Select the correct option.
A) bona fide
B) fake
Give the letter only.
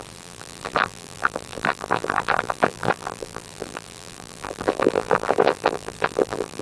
B